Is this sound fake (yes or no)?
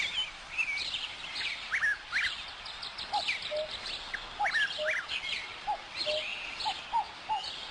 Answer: no